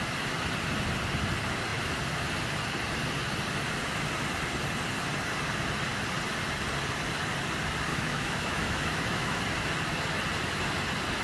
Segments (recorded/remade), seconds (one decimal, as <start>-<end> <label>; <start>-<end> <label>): 0.0-7.9 recorded; 7.9-9.4 remade; 9.4-11.2 recorded